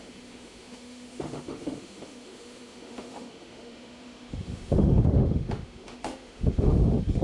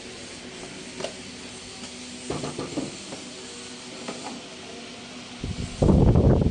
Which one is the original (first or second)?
second